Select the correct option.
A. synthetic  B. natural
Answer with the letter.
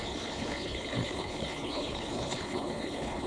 A